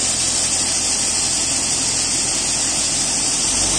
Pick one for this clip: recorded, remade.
recorded